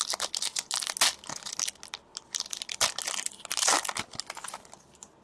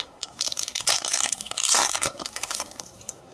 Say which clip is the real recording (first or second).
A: first